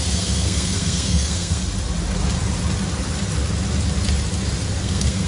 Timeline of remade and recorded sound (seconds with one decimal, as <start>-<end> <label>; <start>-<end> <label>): 0.0-1.6 remade; 1.6-4.8 recorded; 4.8-5.3 remade